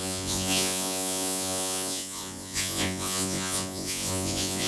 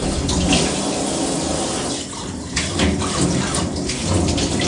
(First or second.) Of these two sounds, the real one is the second